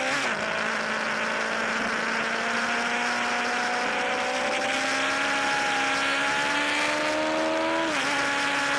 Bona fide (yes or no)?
yes